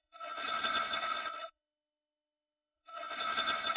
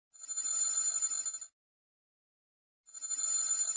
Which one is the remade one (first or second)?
first